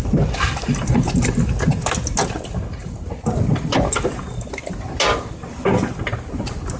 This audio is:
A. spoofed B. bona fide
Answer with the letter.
B